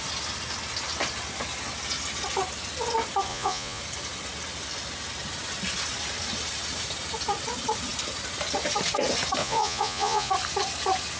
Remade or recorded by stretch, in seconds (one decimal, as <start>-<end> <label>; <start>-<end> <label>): 0.0-3.3 recorded; 3.3-3.8 remade; 3.8-9.4 recorded; 9.4-10.3 remade; 10.3-11.2 recorded